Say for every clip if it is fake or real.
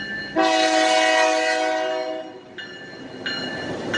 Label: real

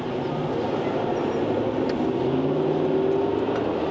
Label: real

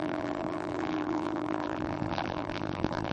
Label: fake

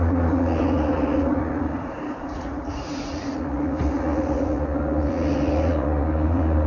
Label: fake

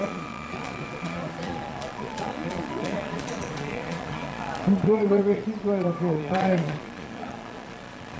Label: fake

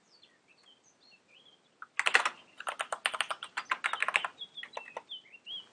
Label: real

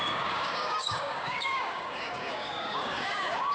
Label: fake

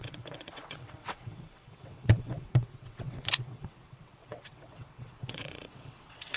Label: fake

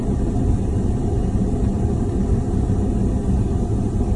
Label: real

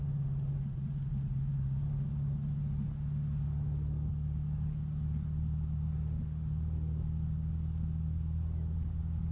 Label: real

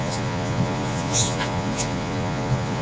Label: fake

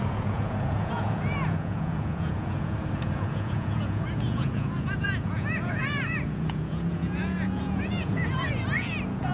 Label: fake